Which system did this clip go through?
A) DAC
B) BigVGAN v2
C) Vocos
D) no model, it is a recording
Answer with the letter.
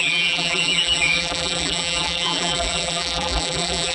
B